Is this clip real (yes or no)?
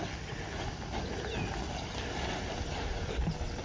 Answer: yes